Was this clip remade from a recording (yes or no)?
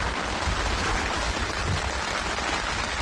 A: no